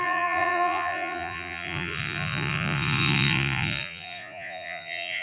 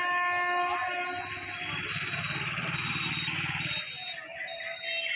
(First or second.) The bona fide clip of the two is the second